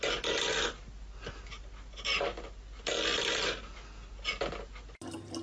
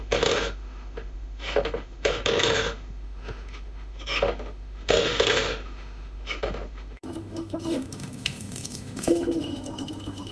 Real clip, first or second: first